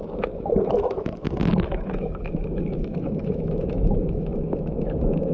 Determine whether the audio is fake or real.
fake